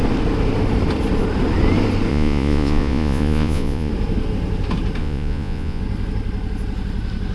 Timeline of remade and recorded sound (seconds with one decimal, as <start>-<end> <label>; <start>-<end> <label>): 0.0-2.1 recorded; 2.1-3.9 remade; 3.9-5.0 recorded; 5.0-5.8 remade; 5.8-7.3 recorded